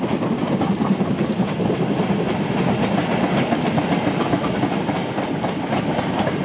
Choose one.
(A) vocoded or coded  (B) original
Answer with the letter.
B